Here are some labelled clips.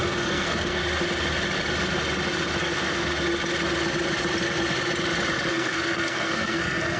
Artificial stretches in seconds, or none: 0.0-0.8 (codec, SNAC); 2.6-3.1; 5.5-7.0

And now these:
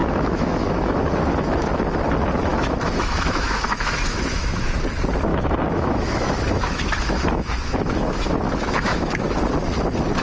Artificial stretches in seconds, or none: 0.0-1.7 (autoencoder, DAC-VAE); 2.5-4.8; 5.3-9.4

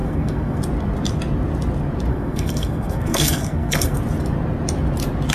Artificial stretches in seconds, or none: 0.0-0.6 (codec, SNAC); 2.1-4.0

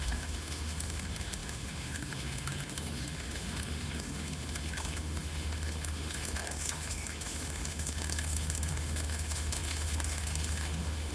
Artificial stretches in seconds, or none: 0.0-11.1 (autoencoder, DAC-VAE)

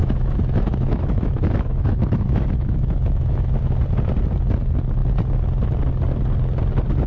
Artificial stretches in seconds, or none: 0.0-3.6 (autoencoder, DAC-VAE)

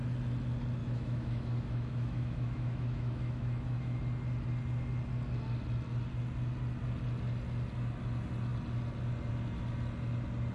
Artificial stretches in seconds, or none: 0.8-4.0 (autoencoder, DAC-VAE)